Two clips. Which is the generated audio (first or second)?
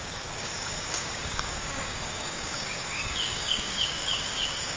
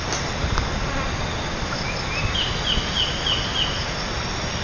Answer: first